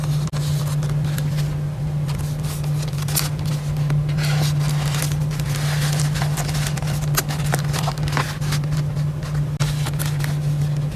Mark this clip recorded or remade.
recorded